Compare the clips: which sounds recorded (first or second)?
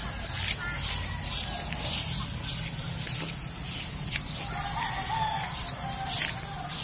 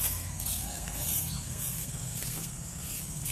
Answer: first